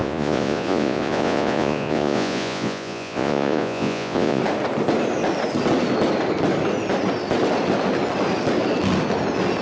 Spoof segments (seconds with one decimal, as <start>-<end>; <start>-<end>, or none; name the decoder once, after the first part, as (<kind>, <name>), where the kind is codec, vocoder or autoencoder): 0.0-4.4 (vocoder, Vocos)